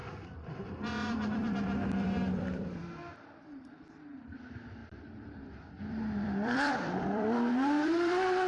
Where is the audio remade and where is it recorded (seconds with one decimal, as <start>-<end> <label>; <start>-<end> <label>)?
0.0-2.8 remade; 2.8-4.8 recorded; 4.8-8.5 remade